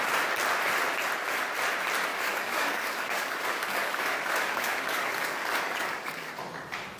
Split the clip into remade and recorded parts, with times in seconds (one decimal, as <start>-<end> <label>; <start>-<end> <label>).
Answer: 0.0-2.1 recorded; 2.1-6.3 remade; 6.3-7.0 recorded